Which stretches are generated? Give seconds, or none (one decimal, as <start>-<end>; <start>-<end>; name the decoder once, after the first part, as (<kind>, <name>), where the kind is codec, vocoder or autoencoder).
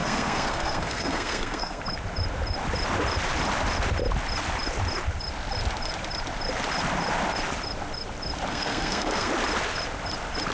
0.0-1.8 (codec, SNAC); 8.5-9.3